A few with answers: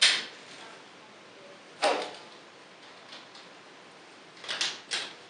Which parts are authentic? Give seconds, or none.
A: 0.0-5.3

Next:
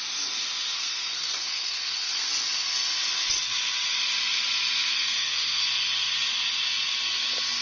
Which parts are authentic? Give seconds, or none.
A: 0.0-0.7; 2.3-4.9; 5.6-7.6